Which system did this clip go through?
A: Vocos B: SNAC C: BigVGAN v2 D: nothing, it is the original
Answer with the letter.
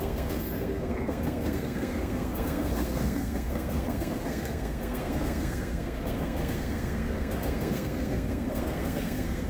B